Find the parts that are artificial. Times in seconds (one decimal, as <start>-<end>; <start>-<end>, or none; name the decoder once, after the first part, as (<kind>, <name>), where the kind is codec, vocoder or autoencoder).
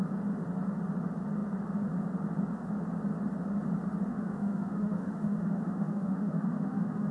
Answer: 4.1-7.1 (autoencoder, DAC-VAE)